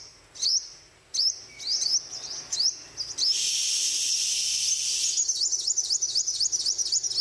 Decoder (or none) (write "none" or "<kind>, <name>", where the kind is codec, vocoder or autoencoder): none